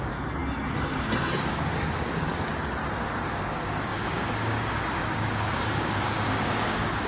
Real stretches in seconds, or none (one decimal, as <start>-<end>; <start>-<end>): 2.3-3.3